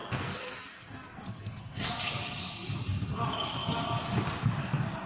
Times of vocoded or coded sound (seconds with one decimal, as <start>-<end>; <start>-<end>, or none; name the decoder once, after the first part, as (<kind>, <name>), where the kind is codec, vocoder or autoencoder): 0.0-1.9 (codec, SNAC)